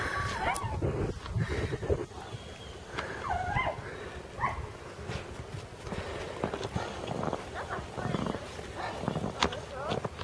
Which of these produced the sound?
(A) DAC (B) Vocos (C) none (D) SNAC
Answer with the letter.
C